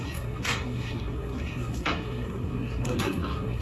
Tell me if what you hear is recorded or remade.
remade